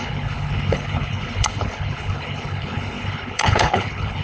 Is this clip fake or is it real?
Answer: fake